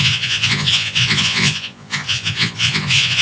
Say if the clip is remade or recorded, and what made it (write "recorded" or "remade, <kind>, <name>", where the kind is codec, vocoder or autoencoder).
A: remade, vocoder, Vocos